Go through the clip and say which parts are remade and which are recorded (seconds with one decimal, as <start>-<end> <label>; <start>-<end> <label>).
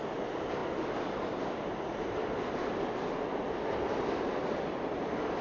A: 0.0-5.4 recorded